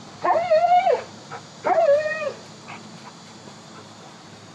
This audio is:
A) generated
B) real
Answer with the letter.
A